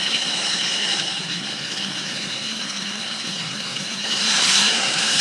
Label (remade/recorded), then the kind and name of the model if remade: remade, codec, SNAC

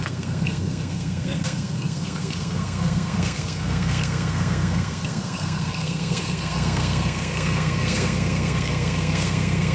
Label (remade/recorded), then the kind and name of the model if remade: remade, codec, SNAC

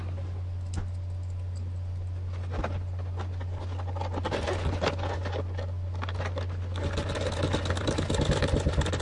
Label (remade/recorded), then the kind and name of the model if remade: recorded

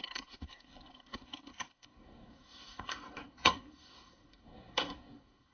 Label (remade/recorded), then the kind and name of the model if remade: remade, codec, SNAC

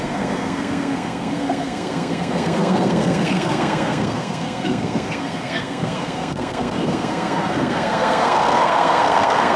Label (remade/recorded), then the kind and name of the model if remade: remade, codec, SNAC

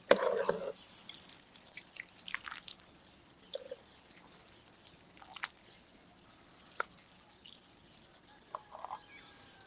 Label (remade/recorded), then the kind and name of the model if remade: recorded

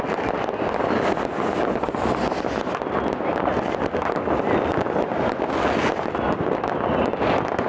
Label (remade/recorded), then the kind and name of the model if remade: recorded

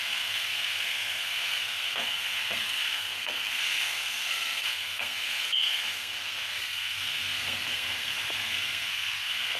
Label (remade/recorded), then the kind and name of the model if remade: remade, codec, SNAC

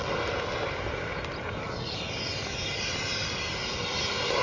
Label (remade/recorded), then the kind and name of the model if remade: recorded